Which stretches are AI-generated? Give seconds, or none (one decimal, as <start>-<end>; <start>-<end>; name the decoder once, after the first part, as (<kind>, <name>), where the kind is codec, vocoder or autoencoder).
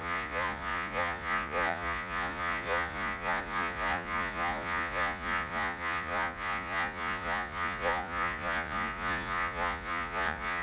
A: 0.0-10.6 (vocoder, Vocos)